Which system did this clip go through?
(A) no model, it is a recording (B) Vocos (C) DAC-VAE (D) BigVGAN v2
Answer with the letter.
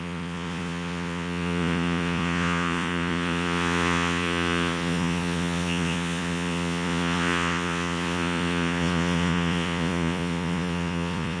B